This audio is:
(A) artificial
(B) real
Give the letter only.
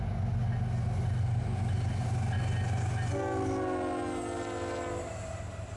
B